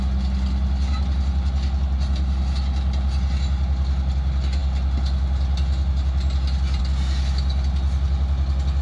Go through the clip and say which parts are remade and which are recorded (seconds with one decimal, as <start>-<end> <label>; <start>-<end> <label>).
0.0-8.8 recorded